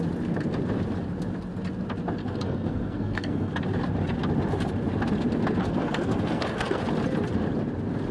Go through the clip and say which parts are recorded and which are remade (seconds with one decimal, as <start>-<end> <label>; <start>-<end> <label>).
0.0-2.2 recorded; 2.2-3.6 remade; 3.6-5.6 recorded; 5.6-6.8 remade; 6.8-8.1 recorded